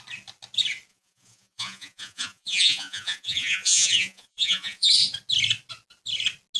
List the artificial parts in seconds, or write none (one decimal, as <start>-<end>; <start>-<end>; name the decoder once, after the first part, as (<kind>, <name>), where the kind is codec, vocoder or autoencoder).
0.9-4.9 (vocoder, Vocos)